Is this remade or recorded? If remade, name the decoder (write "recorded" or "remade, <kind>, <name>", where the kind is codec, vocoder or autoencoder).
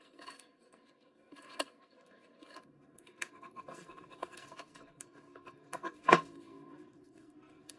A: remade, codec, SNAC